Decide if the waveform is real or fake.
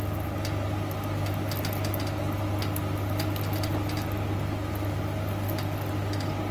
real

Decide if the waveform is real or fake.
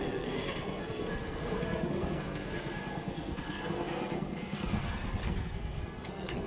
fake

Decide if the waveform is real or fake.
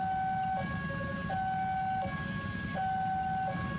real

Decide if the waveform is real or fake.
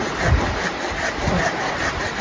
real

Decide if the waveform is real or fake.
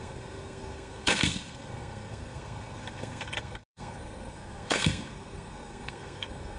fake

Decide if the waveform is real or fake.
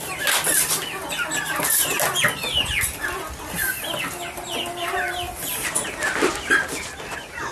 real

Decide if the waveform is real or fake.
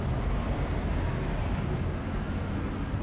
real